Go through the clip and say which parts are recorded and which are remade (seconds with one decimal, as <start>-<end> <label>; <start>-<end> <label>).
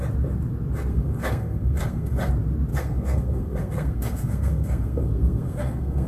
0.0-0.9 recorded; 0.9-2.3 remade; 2.3-2.7 recorded; 2.7-6.1 remade